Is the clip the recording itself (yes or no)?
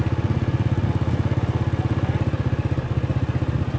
yes